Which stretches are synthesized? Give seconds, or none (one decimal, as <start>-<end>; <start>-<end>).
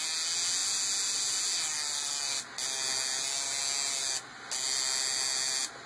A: none